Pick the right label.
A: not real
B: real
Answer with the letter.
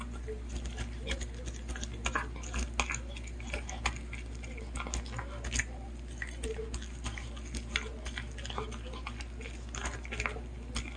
B